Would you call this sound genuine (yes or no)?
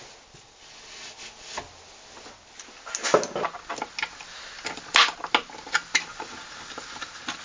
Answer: yes